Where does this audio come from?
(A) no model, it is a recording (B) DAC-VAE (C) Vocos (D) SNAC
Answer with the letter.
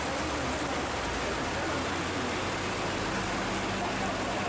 A